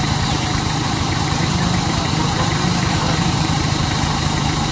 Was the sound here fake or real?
fake